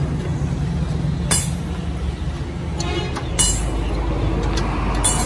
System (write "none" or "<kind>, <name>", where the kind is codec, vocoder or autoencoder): none